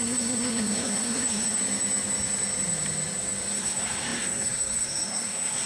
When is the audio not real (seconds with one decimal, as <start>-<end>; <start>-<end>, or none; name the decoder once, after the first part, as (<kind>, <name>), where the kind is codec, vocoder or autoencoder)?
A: 0.0-1.6 (codec, SNAC); 3.5-5.7